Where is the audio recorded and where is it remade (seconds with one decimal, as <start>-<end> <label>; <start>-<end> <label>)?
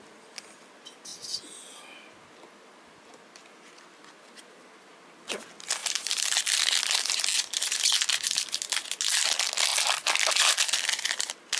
0.0-5.8 recorded; 5.8-6.4 remade; 6.4-11.6 recorded